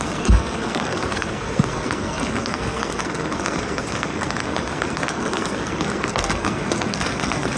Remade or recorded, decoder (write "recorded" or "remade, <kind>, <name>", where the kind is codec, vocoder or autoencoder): remade, codec, SNAC